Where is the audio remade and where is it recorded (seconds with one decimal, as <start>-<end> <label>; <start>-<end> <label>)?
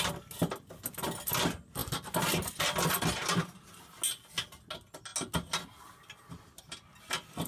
0.0-7.5 recorded